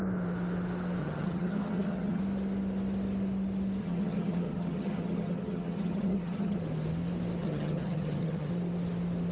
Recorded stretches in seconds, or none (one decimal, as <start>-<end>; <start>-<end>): 0.0-1.0; 2.2-3.8; 6.6-7.4; 8.5-9.3